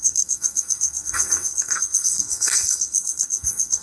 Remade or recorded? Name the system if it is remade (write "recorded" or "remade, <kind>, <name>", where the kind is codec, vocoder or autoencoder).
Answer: remade, codec, SNAC